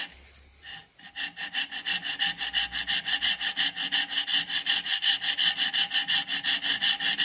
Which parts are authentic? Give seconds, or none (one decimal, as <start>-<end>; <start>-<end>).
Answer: 0.0-0.8; 2.0-4.3; 5.8-7.2